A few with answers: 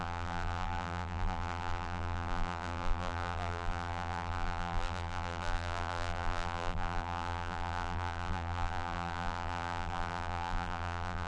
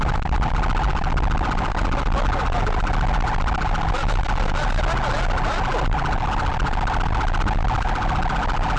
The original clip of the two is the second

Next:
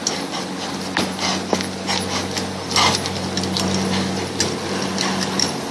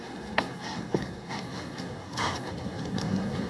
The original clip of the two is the first